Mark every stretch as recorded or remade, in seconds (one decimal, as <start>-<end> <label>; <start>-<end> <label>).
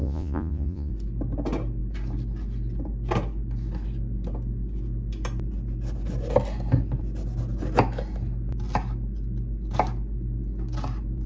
0.0-0.9 remade; 0.9-11.3 recorded